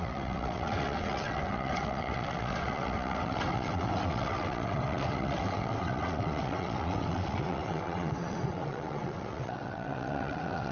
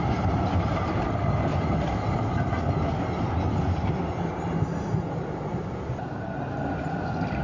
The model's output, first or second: first